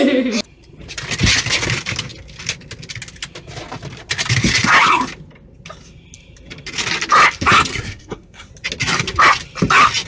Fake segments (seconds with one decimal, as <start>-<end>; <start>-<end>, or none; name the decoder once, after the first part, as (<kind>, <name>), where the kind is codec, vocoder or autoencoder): 7.7-8.5 (codec, SNAC)